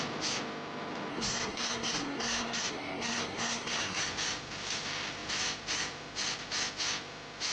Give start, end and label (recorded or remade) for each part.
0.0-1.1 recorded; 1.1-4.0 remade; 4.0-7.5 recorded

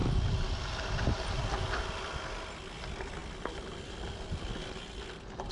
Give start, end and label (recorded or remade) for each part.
0.0-5.5 recorded

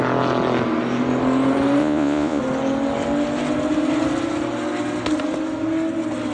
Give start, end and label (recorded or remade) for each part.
0.0-1.8 recorded; 1.8-2.4 remade; 2.4-6.3 recorded

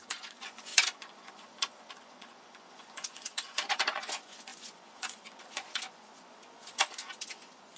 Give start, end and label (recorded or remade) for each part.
0.0-7.8 remade

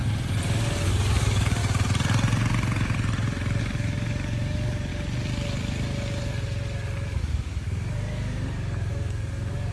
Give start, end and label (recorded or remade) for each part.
0.0-0.9 recorded; 0.9-1.6 remade; 1.6-3.6 recorded; 3.6-4.9 remade; 4.9-7.2 recorded; 7.2-9.7 remade

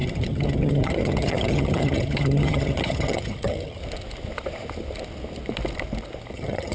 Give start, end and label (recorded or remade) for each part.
0.0-3.8 remade; 3.8-6.3 recorded; 6.3-6.7 remade

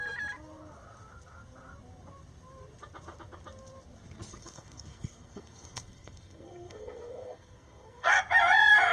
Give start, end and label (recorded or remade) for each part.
0.0-4.3 recorded; 4.3-8.2 remade; 8.2-8.9 recorded